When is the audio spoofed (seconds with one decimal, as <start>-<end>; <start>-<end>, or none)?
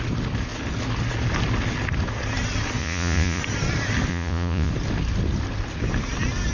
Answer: 2.8-3.4; 4.1-4.7